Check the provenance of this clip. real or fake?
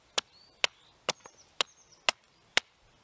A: real